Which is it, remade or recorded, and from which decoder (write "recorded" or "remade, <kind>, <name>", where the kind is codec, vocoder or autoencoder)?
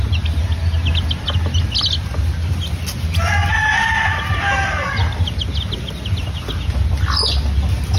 recorded